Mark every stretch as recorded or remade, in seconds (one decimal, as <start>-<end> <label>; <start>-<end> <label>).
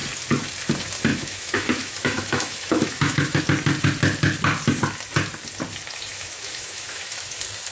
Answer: 0.0-1.1 recorded; 1.1-3.4 remade; 3.4-6.1 recorded; 6.1-7.2 remade; 7.2-7.7 recorded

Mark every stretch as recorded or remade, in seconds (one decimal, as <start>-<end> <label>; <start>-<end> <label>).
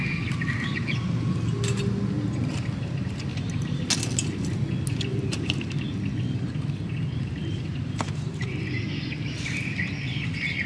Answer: 0.0-3.3 recorded; 3.3-3.8 remade; 3.8-5.1 recorded; 5.1-5.7 remade; 5.7-7.4 recorded; 7.4-8.5 remade; 8.5-10.7 recorded